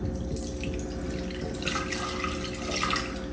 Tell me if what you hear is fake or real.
real